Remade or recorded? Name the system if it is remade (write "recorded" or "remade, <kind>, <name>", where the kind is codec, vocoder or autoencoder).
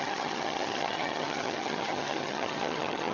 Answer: remade, vocoder, HiFi-GAN